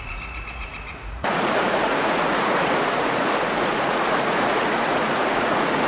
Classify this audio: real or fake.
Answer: fake